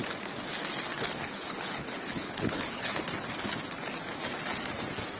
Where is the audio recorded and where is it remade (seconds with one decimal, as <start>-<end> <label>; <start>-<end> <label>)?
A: 0.0-0.9 recorded; 0.9-2.9 remade; 2.9-5.2 recorded